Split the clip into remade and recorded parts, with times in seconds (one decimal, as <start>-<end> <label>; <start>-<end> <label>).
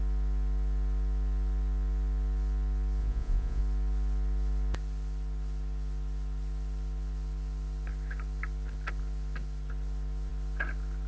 0.0-3.0 recorded; 3.0-3.6 remade; 3.6-11.1 recorded